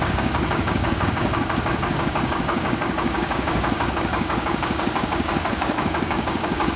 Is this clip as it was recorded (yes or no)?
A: no